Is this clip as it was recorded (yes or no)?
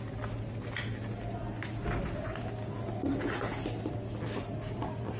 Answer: yes